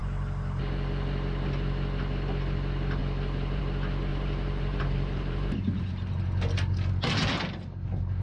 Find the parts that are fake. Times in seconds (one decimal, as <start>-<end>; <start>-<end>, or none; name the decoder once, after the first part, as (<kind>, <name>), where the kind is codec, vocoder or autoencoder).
3.0-3.6 (vocoder, BigVGAN v2); 4.1-5.8